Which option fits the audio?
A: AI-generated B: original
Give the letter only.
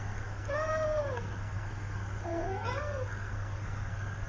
A